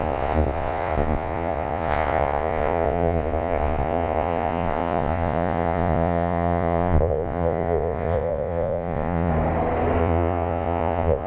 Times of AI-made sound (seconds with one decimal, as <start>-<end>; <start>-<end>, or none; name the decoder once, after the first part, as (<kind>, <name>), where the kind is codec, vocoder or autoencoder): 0.0-9.3 (vocoder, Vocos); 10.0-11.3